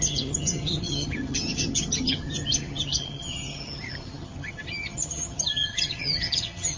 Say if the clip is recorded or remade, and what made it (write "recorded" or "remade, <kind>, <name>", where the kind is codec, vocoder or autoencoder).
remade, vocoder, HiFi-GAN